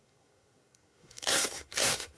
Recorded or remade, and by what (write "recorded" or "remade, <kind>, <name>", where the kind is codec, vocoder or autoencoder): remade, codec, SNAC